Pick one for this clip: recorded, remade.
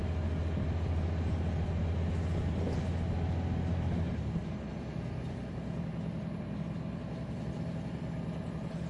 recorded